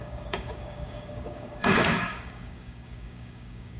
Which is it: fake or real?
fake